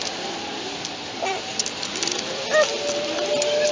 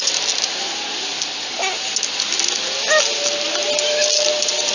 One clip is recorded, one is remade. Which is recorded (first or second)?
second